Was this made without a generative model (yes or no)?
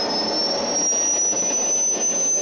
yes